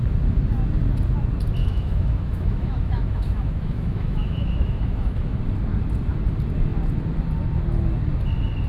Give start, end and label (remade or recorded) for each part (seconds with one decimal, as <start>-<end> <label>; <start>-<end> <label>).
0.0-1.6 recorded; 1.6-5.4 remade; 5.4-8.7 recorded

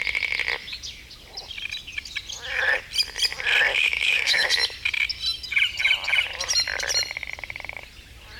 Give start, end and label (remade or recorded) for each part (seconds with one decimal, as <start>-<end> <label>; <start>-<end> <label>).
0.0-3.7 recorded; 3.7-4.5 remade; 4.5-8.4 recorded

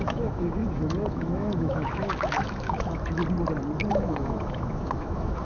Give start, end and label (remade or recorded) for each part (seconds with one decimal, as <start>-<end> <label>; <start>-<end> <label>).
0.0-3.2 remade; 3.2-3.9 recorded; 3.9-5.4 remade

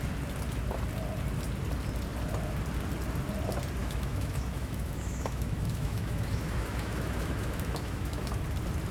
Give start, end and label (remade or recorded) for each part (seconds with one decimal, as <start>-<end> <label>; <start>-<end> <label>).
0.0-3.8 recorded; 3.8-8.3 remade; 8.3-8.9 recorded